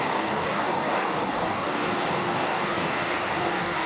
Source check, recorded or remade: remade